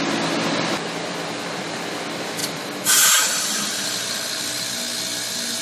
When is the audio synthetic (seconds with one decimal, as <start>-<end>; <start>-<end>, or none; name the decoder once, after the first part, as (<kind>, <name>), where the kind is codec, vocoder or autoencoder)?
none